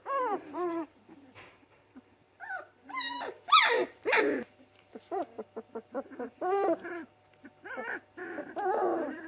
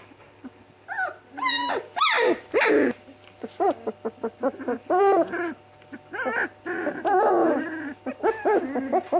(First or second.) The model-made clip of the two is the first